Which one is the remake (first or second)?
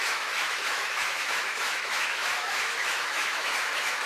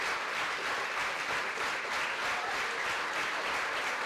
first